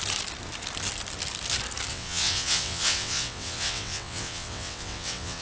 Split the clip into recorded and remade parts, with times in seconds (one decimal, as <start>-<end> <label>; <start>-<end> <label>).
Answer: 0.0-1.9 recorded; 1.9-5.4 remade